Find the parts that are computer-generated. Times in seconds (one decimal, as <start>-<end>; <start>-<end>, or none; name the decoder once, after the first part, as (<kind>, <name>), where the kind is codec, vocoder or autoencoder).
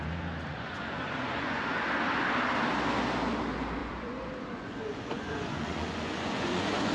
0.5-1.6 (vocoder, Vocos); 3.8-6.9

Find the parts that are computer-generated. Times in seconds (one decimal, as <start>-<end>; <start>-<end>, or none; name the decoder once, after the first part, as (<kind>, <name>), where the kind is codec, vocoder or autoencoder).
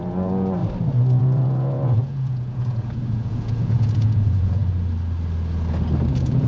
0.0-0.6 (vocoder, Vocos); 1.2-4.6; 6.1-6.5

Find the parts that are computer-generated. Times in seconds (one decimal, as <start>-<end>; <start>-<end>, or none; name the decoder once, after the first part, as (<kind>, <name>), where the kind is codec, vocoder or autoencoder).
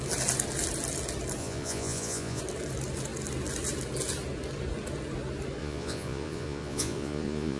1.4-2.4 (vocoder, Vocos); 5.6-7.6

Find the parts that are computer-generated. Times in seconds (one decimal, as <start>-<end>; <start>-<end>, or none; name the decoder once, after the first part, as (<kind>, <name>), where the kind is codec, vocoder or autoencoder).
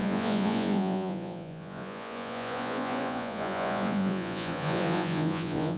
0.0-5.8 (vocoder, Vocos)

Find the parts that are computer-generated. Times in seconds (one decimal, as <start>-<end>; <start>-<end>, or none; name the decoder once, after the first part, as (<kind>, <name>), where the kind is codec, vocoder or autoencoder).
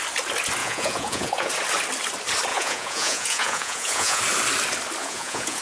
0.6-1.5 (vocoder, Vocos); 2.5-4.2; 5.0-5.6